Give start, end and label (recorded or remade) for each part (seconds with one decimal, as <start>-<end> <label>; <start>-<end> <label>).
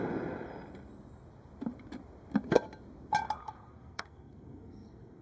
0.0-3.4 recorded; 3.4-5.2 remade